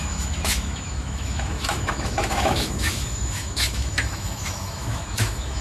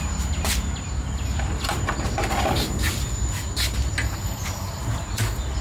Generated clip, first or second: first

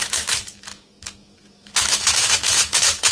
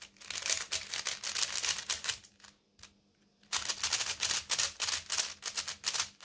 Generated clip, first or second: first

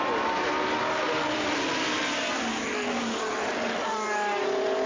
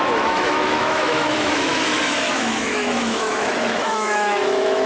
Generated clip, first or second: second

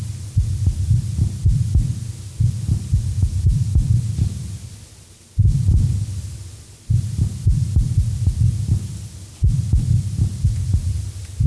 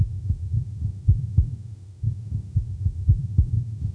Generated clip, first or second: second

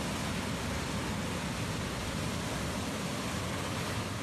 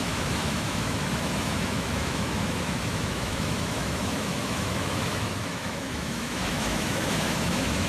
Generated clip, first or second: second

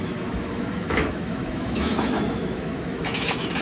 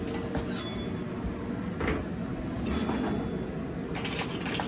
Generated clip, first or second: first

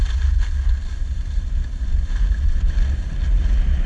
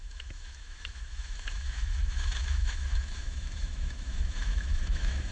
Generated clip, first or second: second